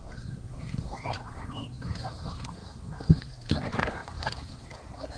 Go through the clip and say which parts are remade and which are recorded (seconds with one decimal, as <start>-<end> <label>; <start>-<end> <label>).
0.0-5.2 remade